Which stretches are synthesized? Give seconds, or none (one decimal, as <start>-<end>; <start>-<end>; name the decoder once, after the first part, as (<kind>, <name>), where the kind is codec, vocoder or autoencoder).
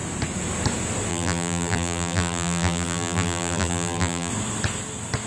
1.1-4.3 (vocoder, BigVGAN v2)